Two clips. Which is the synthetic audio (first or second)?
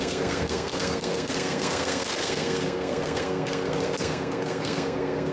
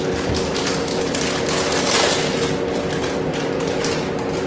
first